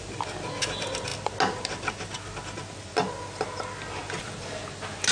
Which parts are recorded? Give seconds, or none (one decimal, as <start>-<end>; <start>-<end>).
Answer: 0.0-5.1

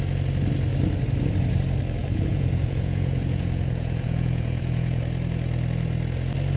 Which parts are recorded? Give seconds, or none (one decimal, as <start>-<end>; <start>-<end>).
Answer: 0.0-2.0; 5.0-6.6

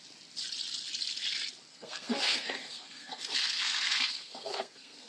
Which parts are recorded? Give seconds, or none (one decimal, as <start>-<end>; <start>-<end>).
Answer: 0.0-1.7

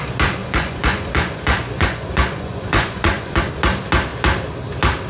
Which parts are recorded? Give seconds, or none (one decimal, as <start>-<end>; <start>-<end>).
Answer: 0.0-0.4; 3.5-5.1

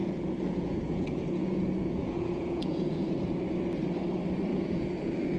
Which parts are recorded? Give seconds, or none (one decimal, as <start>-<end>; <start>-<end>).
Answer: 3.2-4.5

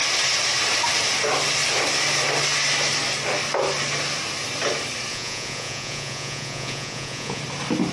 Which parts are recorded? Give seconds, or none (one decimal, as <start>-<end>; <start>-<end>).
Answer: 0.0-5.1; 7.4-7.9

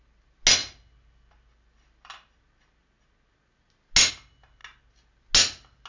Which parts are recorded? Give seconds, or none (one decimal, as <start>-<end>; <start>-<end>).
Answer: 0.0-5.9